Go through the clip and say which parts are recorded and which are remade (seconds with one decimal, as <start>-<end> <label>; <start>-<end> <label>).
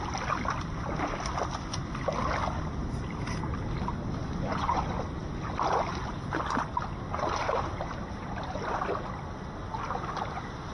0.0-4.2 recorded; 4.2-4.8 remade; 4.8-10.7 recorded